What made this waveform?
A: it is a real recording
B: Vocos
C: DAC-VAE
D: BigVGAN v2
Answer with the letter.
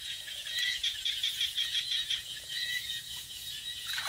B